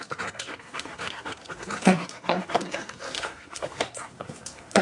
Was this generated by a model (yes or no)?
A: yes